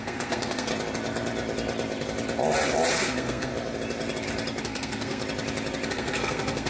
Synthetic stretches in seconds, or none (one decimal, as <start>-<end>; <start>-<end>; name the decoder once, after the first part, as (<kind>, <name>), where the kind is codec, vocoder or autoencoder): 0.0-0.7 (codec, SNAC); 2.9-3.5; 4.6-5.2; 5.9-6.7